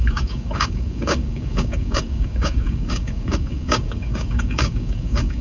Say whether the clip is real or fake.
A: fake